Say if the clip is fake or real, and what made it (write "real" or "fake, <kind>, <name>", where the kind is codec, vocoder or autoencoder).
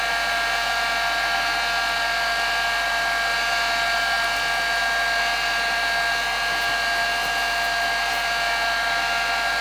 real